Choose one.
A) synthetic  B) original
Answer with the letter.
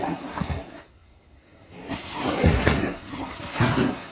A